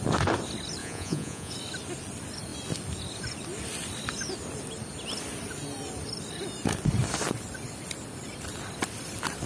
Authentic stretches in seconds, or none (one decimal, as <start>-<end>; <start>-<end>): 0.0-0.8; 1.5-9.5